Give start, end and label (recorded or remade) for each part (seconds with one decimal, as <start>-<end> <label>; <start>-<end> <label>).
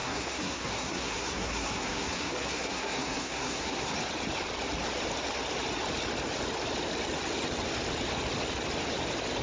0.0-3.9 remade; 3.9-9.4 recorded